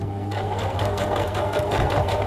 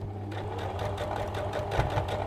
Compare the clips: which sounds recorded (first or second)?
second